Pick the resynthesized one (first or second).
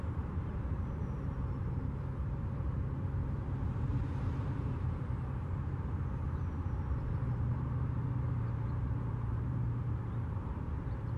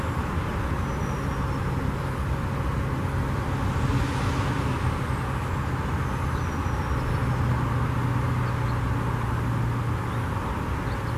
first